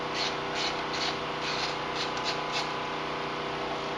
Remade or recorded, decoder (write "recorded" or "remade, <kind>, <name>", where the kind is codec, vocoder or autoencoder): recorded